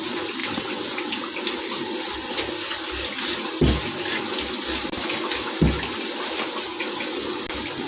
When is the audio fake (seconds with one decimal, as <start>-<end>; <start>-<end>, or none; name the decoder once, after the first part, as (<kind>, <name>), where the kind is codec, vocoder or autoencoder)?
0.4-1.1 (vocoder, WaveNeXt)